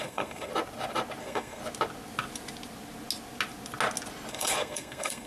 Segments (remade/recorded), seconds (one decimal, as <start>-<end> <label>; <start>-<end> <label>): 0.0-0.5 remade; 0.5-1.2 recorded; 1.2-1.6 remade; 1.6-4.3 recorded; 4.3-5.3 remade